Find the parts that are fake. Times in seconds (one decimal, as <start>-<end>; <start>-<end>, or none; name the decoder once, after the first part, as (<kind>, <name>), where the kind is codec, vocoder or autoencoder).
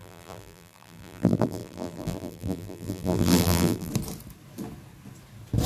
0.0-3.9 (vocoder, BigVGAN v2)